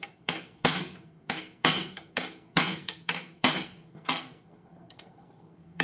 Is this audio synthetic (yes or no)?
yes